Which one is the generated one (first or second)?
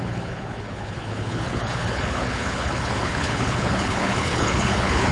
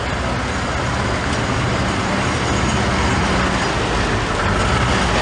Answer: first